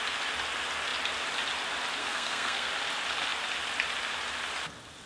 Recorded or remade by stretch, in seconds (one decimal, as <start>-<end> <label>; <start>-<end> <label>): 0.0-2.0 recorded; 2.0-2.7 remade; 2.7-5.1 recorded